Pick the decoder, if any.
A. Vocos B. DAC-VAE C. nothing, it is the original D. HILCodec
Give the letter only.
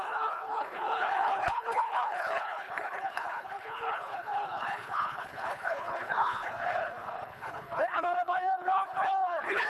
D